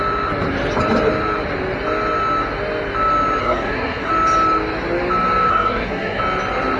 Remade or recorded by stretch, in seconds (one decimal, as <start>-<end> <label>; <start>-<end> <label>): 0.0-3.4 recorded; 3.4-4.1 remade; 4.1-5.5 recorded; 5.5-6.2 remade; 6.2-6.8 recorded

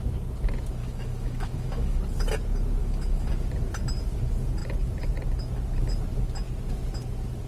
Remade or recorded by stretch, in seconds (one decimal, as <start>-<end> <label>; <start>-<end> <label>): 0.0-0.8 recorded; 0.8-2.0 remade; 2.0-2.8 recorded; 2.8-3.3 remade; 3.3-7.5 recorded

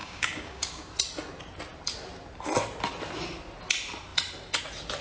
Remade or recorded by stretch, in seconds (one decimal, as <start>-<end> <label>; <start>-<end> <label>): 0.0-0.9 remade; 0.9-5.0 recorded